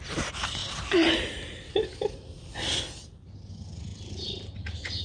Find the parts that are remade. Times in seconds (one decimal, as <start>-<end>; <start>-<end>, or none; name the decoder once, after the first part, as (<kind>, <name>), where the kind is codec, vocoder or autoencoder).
3.9-5.0 (vocoder, BigVGAN v2)